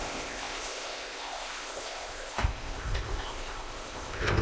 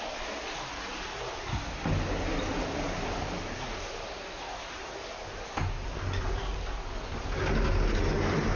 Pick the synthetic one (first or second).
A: first